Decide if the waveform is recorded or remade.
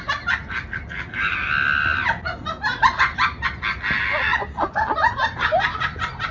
recorded